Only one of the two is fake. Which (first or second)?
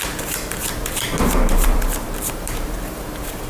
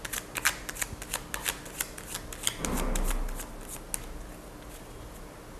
first